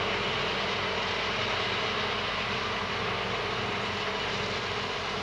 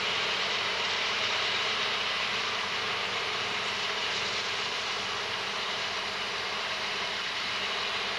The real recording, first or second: first